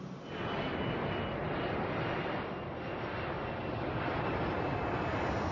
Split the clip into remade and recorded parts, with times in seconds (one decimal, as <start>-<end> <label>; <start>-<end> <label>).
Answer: 0.0-5.5 recorded